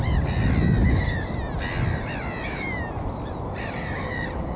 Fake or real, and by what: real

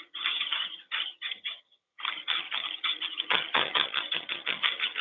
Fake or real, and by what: fake, vocoder, HiFi-GAN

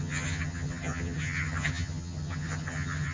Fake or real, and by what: fake, vocoder, HiFi-GAN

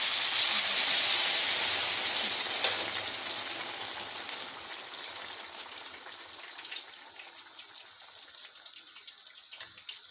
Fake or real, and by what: real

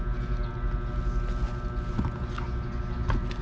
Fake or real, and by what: real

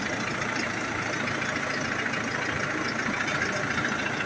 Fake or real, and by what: real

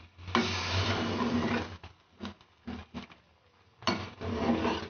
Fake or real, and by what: real